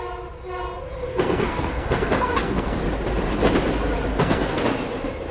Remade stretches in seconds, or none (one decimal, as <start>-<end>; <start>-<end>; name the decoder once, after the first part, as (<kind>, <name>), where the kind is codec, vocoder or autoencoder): 1.1-2.8 (codec, SNAC); 4.1-4.6